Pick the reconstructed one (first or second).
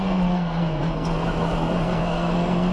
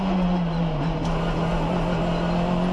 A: first